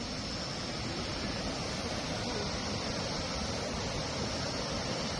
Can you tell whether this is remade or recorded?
recorded